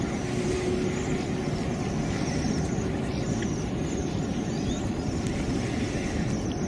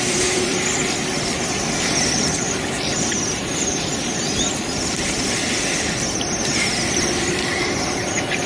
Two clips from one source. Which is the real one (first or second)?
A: first